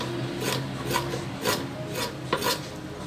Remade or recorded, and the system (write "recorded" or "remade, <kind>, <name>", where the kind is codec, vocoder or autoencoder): recorded